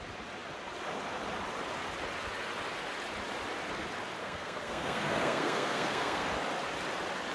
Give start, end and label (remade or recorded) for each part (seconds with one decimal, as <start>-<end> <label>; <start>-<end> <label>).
0.0-4.2 recorded; 4.2-6.3 remade; 6.3-7.3 recorded